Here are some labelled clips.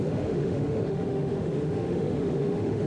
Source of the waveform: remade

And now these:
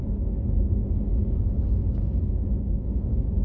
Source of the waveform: recorded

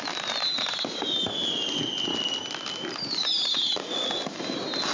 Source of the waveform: remade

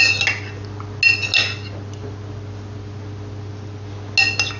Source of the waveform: recorded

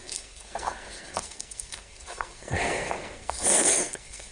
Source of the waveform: remade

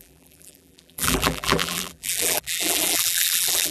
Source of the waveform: remade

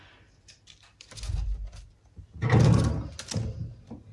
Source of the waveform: recorded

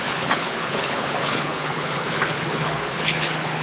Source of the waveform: remade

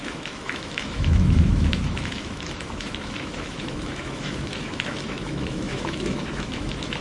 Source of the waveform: remade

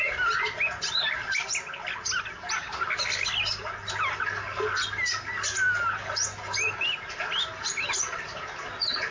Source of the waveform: recorded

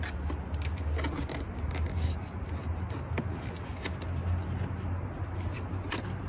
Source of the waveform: recorded